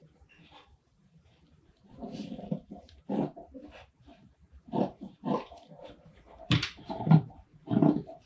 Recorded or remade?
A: remade